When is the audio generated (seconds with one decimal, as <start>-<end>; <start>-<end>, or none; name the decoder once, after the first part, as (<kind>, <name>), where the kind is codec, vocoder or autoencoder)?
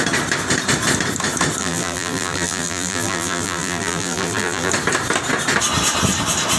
1.6-4.7 (vocoder, BigVGAN v2)